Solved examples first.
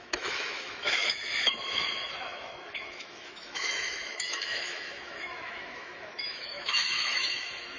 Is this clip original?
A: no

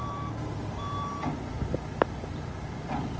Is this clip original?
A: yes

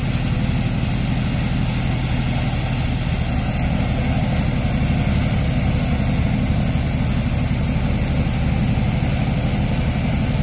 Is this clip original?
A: yes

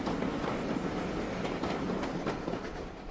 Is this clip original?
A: yes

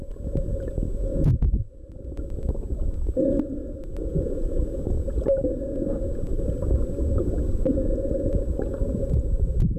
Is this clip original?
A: yes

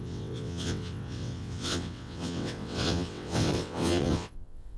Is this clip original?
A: no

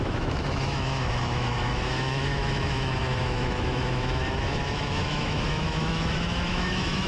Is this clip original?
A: no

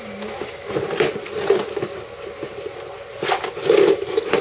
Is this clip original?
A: yes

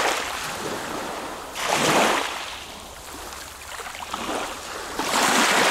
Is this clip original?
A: yes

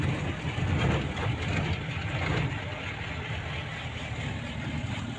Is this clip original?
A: yes